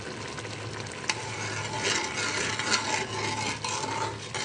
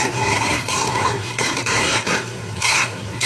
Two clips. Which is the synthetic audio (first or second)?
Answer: second